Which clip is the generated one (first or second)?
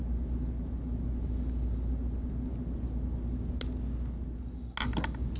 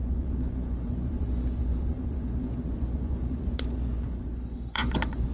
second